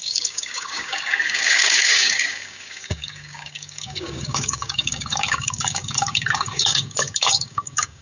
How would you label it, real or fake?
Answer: fake